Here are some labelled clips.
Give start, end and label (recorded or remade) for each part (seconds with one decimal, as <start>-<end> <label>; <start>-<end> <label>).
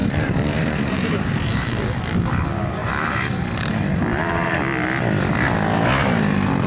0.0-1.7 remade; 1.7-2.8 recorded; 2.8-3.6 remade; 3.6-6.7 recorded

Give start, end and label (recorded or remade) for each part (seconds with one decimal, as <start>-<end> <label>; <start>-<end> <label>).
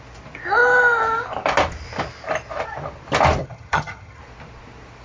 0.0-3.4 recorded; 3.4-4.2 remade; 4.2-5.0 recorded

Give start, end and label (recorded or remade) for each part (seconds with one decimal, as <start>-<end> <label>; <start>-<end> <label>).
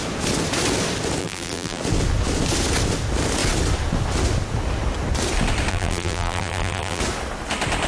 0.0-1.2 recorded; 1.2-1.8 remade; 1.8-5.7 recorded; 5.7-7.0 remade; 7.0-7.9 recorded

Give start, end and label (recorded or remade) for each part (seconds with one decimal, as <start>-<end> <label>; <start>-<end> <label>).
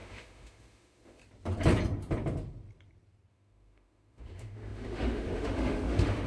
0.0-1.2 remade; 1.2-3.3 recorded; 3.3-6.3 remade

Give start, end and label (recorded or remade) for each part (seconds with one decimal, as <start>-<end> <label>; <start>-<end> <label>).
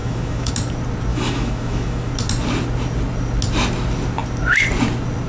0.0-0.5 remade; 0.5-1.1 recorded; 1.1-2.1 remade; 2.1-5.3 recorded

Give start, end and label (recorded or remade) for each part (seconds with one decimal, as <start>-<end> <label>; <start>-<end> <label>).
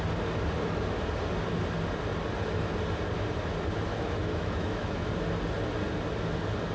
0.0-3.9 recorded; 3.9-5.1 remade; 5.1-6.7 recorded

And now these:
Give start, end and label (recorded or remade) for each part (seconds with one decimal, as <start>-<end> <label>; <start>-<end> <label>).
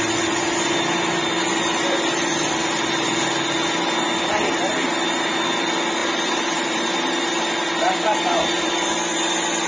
0.0-6.0 recorded; 6.0-7.4 remade; 7.4-9.7 recorded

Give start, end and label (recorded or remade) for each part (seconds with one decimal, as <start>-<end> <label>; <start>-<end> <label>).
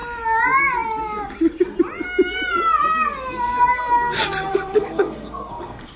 0.0-4.5 recorded; 4.5-6.0 remade